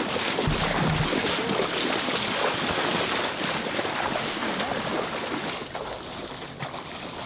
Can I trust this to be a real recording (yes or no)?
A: yes